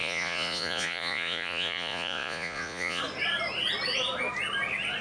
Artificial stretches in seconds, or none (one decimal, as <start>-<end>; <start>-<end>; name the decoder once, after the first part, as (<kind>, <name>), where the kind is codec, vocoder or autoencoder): 0.0-3.0 (vocoder, Vocos)